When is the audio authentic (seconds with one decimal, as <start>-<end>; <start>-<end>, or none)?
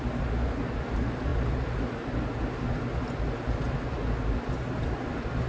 0.0-5.5